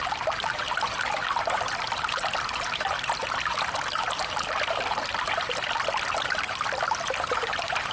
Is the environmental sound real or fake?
real